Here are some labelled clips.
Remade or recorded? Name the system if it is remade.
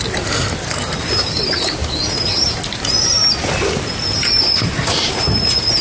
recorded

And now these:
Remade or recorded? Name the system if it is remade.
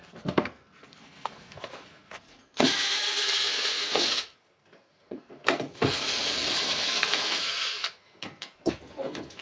remade, codec, SNAC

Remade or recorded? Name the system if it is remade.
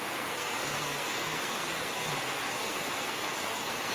remade, codec, SNAC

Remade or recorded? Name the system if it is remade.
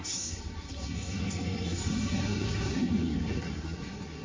remade, codec, SNAC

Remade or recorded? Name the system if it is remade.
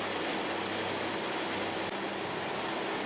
recorded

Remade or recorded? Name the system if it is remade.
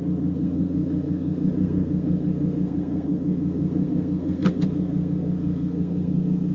remade, codec, SNAC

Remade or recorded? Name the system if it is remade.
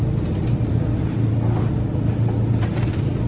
recorded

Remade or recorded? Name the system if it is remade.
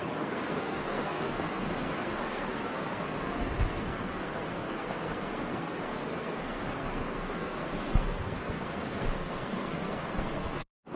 remade, codec, SNAC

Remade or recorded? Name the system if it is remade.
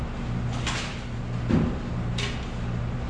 recorded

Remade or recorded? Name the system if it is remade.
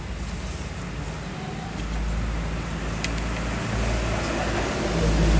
recorded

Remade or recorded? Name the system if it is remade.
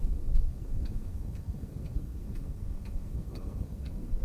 remade, codec, SNAC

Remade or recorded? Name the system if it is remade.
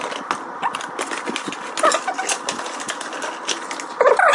recorded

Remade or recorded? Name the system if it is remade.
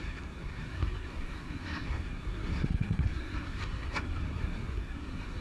remade, codec, SNAC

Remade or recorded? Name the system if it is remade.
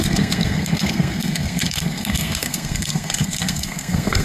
remade, codec, SNAC